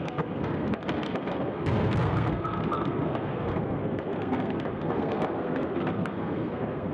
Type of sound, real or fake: fake